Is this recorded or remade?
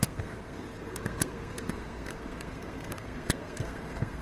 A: remade